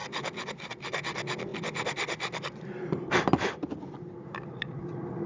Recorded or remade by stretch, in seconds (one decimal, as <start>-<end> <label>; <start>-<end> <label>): 0.0-5.3 remade